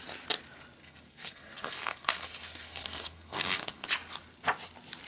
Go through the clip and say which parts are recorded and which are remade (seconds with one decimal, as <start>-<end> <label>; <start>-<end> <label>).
0.0-0.8 recorded; 0.8-3.9 remade; 3.9-5.1 recorded